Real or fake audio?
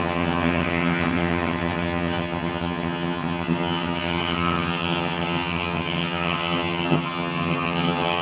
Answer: fake